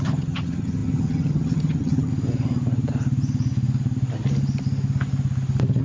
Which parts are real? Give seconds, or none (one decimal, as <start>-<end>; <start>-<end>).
2.1-5.8